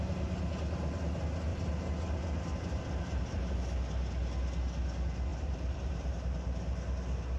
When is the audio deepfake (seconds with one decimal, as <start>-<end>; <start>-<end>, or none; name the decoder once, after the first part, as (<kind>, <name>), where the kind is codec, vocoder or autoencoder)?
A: 1.5-3.5 (vocoder, BigVGAN v2); 5.3-6.1